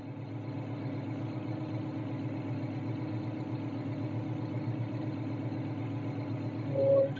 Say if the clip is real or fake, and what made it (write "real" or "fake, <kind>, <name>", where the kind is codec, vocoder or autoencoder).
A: real